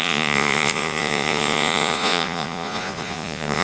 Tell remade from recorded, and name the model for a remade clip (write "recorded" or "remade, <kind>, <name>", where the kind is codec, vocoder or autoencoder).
remade, vocoder, Vocos